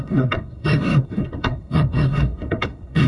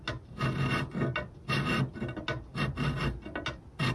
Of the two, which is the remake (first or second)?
first